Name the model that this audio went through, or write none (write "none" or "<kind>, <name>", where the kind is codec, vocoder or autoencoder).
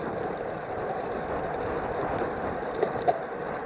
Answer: none